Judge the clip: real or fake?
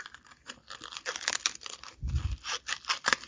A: real